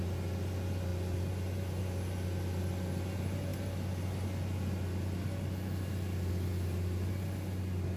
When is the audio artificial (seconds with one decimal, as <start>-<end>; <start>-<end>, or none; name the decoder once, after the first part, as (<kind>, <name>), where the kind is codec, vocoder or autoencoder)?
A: none